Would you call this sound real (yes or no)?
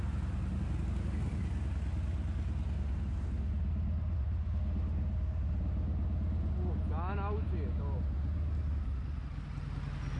yes